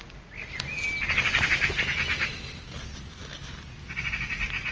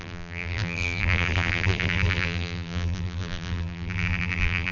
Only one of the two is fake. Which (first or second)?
second